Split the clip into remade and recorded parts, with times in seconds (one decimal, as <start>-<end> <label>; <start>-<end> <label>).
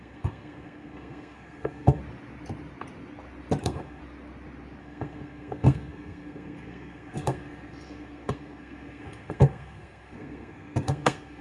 0.0-2.0 remade; 2.0-3.6 recorded; 3.6-4.0 remade; 4.0-4.8 recorded; 4.8-11.4 remade